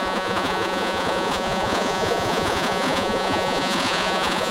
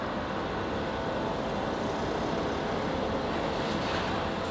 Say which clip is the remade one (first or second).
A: first